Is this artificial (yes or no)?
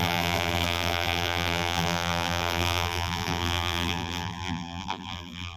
yes